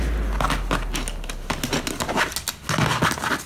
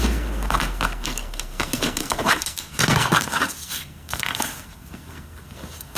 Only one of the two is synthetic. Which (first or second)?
second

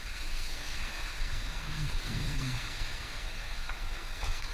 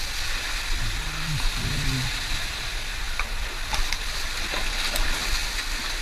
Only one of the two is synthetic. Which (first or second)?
first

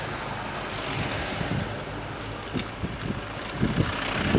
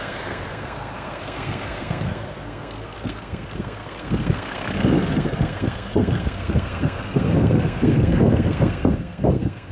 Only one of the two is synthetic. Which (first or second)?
second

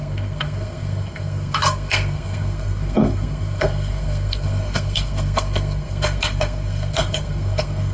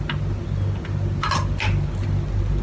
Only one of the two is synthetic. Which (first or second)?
first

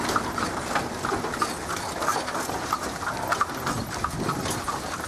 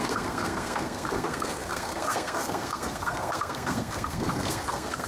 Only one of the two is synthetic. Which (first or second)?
second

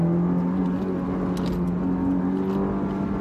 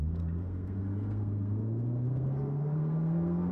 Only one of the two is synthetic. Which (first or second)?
second